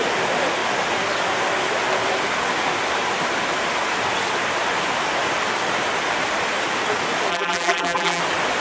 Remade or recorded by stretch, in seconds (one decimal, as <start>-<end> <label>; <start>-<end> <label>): 0.0-7.3 recorded; 7.3-8.2 remade; 8.2-8.6 recorded